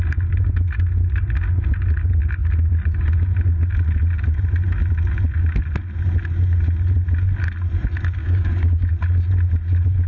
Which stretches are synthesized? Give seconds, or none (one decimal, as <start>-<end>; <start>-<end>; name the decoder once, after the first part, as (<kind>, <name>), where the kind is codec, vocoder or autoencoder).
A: 8.2-8.9 (codec, DAC)